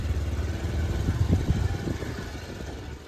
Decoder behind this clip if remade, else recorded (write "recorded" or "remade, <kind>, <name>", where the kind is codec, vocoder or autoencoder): remade, vocoder, BigVGAN v2